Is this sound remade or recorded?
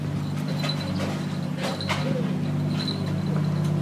recorded